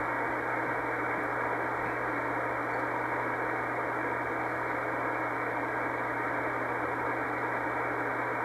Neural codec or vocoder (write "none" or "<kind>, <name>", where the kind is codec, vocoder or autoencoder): none